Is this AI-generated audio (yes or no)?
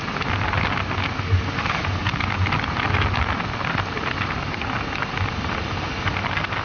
no